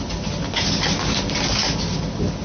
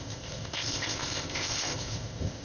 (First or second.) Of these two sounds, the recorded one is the first